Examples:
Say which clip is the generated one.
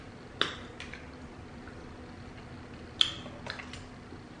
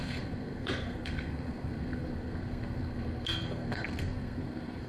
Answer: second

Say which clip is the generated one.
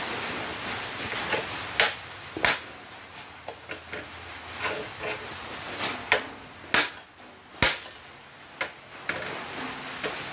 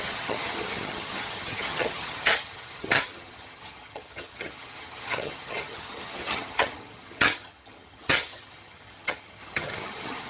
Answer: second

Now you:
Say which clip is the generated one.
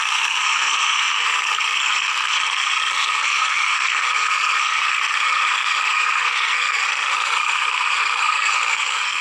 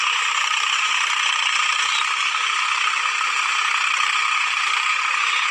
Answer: first